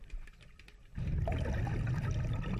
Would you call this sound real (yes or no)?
yes